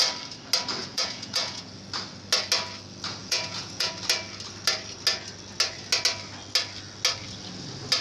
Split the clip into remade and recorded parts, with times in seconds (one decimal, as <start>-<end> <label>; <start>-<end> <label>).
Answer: 0.0-0.8 recorded; 0.8-1.7 remade; 1.7-3.2 recorded; 3.2-3.9 remade; 3.9-8.0 recorded

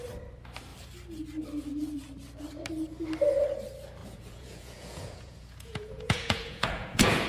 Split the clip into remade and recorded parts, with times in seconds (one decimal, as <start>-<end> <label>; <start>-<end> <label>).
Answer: 0.0-4.0 recorded; 4.0-7.3 remade

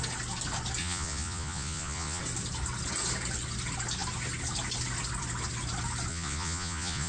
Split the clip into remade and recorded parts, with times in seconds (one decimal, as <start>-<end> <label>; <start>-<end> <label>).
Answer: 0.0-0.8 recorded; 0.8-2.2 remade; 2.2-6.1 recorded; 6.1-7.1 remade

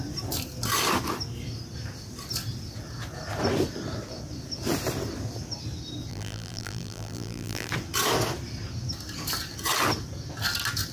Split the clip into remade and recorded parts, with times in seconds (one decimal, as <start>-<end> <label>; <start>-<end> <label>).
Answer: 0.0-6.1 recorded; 6.1-7.7 remade; 7.7-10.9 recorded

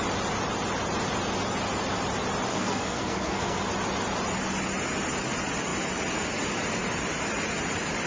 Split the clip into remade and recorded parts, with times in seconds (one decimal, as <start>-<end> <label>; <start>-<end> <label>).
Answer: 0.0-2.5 recorded; 2.5-3.6 remade; 3.6-8.1 recorded

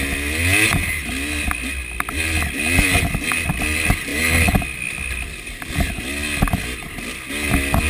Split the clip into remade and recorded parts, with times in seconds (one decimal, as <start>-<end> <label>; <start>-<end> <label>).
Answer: 0.0-4.1 recorded; 4.1-5.7 remade; 5.7-7.9 recorded

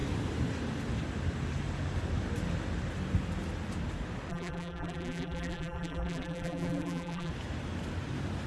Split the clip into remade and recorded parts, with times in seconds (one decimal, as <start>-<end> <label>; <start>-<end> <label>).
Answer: 0.0-4.3 recorded; 4.3-7.3 remade; 7.3-8.5 recorded